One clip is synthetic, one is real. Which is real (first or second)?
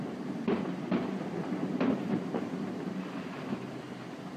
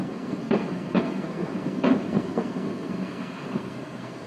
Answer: first